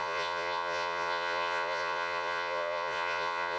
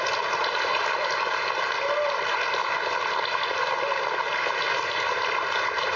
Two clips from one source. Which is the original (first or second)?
second